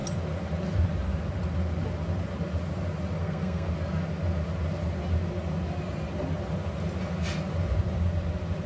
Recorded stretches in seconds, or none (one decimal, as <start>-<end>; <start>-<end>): 0.0-3.2; 3.7-8.7